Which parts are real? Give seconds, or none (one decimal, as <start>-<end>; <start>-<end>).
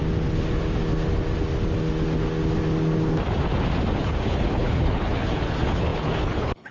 0.0-4.0